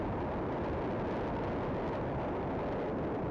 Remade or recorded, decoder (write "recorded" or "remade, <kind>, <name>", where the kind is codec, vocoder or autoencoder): recorded